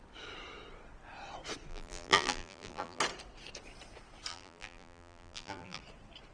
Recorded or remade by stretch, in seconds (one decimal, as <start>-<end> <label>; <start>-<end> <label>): 0.0-1.7 recorded; 1.7-3.0 remade; 3.0-4.3 recorded; 4.3-5.8 remade; 5.8-6.3 recorded